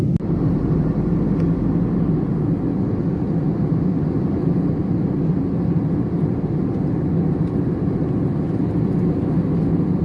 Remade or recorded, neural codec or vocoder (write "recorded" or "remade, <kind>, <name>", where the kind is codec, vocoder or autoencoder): recorded